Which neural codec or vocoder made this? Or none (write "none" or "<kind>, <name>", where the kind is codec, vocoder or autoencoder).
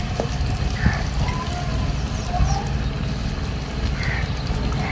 none